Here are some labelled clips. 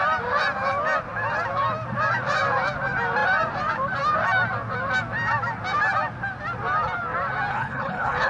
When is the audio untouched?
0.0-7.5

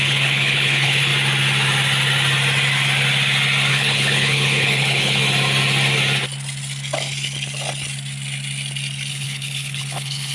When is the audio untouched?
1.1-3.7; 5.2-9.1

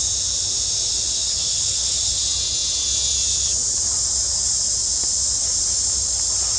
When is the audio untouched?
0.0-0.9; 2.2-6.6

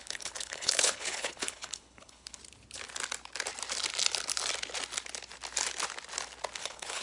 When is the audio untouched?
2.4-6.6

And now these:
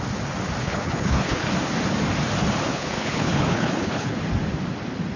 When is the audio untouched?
0.0-0.6; 1.5-2.7; 4.2-5.2